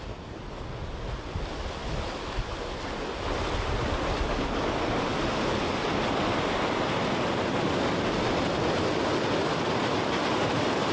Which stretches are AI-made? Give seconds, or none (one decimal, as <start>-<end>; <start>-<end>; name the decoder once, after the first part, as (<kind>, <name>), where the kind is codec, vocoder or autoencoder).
none